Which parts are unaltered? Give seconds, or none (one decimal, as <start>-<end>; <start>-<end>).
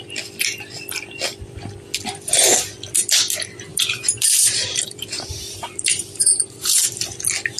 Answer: 0.0-3.7; 7.0-7.6